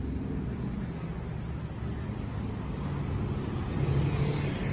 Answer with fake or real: real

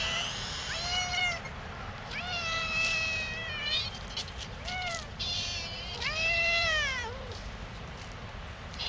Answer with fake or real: fake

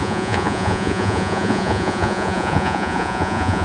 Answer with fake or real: fake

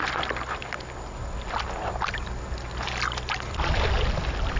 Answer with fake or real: real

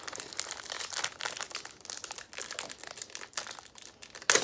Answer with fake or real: real